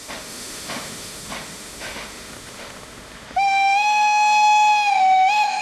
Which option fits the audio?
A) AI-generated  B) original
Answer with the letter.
A